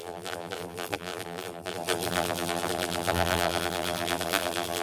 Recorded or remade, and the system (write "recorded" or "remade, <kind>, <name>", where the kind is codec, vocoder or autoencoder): remade, vocoder, BigVGAN v2